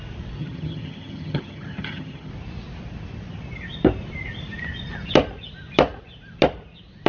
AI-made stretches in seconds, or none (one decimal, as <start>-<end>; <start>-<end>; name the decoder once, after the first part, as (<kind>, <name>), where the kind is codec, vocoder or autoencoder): 0.4-2.3 (vocoder, HiFi-GAN)